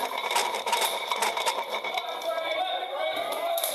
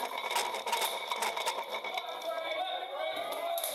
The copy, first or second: first